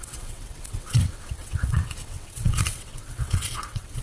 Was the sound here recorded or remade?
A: remade